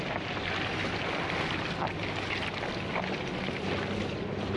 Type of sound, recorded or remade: recorded